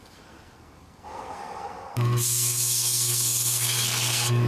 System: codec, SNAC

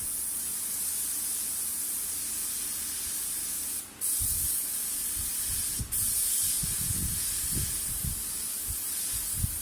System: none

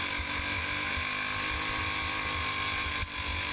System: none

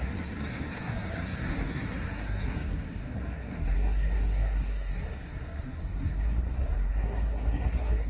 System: codec, SNAC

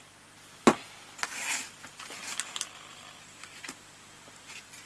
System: none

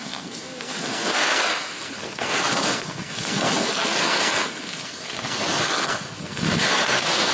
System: codec, SNAC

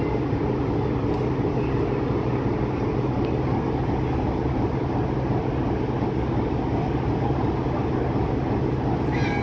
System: none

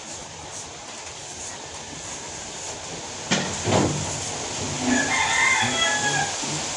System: none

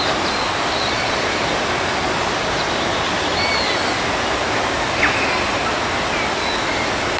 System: none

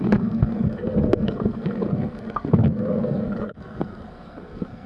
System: codec, SNAC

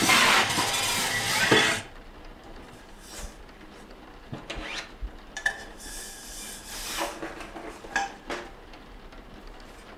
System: none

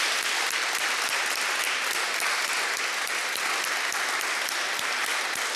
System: none